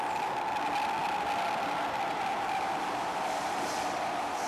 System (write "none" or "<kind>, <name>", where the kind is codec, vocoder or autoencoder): none